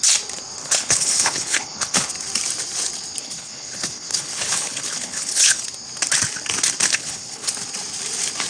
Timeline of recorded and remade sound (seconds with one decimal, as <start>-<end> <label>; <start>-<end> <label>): 0.0-0.6 recorded; 0.6-2.1 remade; 2.1-3.2 recorded; 3.2-5.6 remade; 5.6-6.9 recorded; 6.9-7.5 remade; 7.5-8.5 recorded